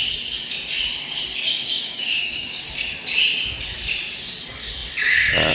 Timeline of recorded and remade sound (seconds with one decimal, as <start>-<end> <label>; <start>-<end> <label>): 0.0-1.5 recorded; 1.5-2.6 remade; 2.6-5.5 recorded